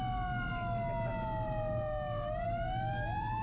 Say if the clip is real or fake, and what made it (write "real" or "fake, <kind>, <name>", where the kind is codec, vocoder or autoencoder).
real